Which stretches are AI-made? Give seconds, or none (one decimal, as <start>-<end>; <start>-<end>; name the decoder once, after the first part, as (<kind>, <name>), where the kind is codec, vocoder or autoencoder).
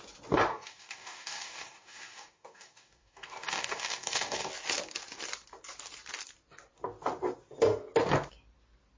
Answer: 0.5-4.5 (codec, DAC)